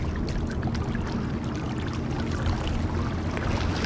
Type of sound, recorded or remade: recorded